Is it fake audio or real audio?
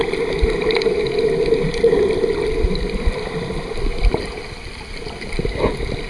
real